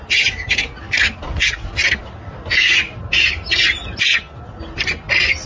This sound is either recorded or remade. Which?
recorded